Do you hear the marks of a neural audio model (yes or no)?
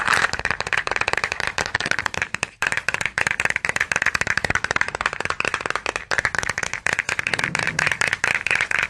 yes